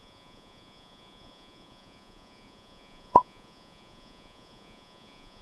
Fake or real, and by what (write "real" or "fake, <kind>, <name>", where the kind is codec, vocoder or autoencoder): fake, vocoder, Vocos